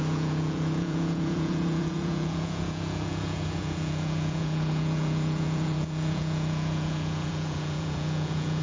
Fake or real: fake